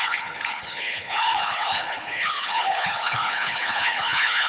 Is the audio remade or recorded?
remade